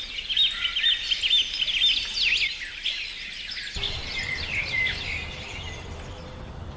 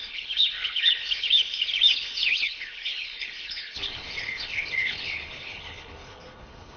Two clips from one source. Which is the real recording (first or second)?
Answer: first